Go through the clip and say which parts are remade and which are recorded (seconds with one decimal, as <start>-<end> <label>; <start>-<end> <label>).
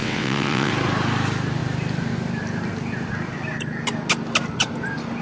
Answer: 0.0-0.7 remade; 0.7-5.2 recorded